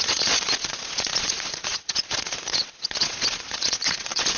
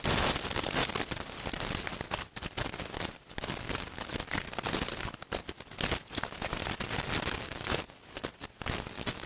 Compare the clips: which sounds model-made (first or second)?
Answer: first